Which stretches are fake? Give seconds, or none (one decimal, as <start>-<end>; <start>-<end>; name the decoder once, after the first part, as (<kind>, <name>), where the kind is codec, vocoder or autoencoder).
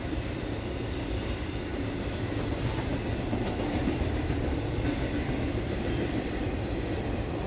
0.0-1.7 (vocoder, BigVGAN v2); 2.5-2.9; 5.4-7.5